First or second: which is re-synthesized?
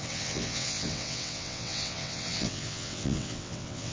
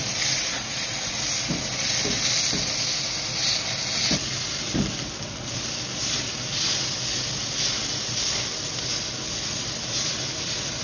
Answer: first